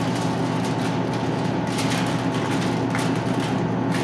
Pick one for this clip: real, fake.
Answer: real